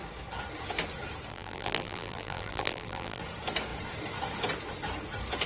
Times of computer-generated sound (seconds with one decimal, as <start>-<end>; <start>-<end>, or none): 1.3-3.2